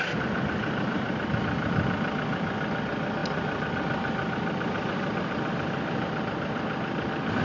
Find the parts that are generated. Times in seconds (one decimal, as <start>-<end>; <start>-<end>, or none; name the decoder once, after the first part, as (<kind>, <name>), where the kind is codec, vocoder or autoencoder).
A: none